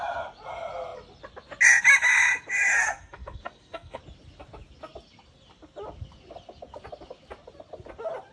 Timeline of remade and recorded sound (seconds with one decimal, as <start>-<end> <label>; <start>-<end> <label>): 0.0-2.8 recorded; 2.8-4.0 remade; 4.0-8.3 recorded